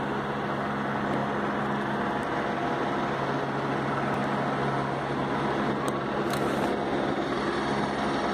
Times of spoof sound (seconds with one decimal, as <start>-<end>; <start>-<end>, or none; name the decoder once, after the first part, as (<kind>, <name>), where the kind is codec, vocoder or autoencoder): none